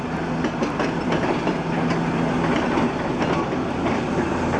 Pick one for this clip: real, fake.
real